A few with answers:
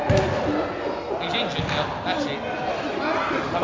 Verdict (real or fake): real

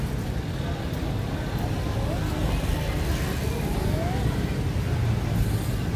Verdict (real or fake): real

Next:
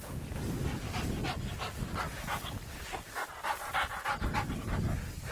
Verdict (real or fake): real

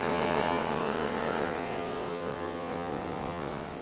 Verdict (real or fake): fake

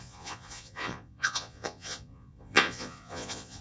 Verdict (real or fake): fake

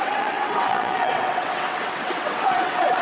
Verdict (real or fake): fake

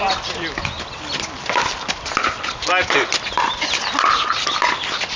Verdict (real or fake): real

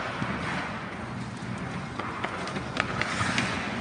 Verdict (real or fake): fake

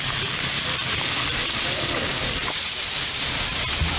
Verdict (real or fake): fake